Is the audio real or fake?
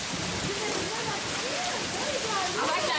real